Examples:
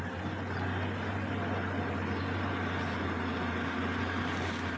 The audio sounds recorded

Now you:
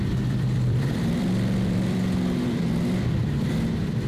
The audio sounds remade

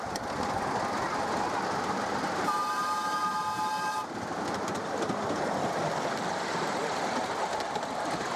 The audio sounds recorded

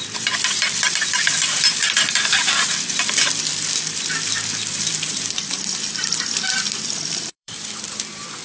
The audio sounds remade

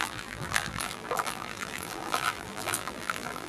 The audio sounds remade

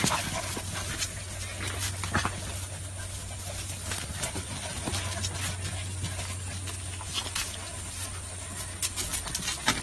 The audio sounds recorded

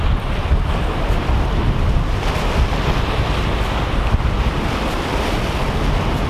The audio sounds recorded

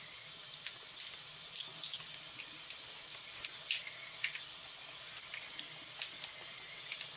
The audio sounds recorded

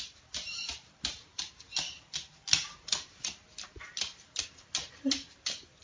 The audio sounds remade